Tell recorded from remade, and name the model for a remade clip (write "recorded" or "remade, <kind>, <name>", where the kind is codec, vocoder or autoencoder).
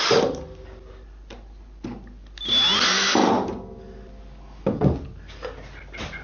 recorded